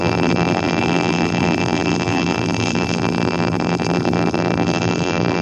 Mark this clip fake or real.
fake